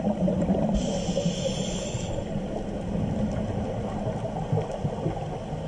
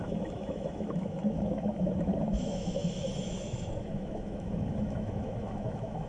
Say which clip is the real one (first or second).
first